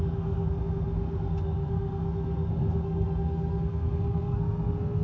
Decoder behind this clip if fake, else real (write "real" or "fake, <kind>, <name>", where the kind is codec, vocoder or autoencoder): fake, codec, SNAC